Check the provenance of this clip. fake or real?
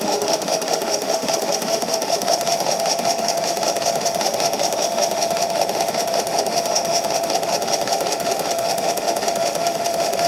fake